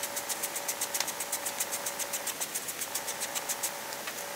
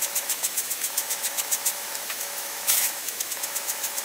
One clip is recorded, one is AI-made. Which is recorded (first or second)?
first